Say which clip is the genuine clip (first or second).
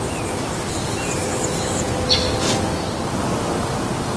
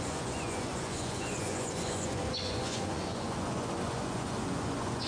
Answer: first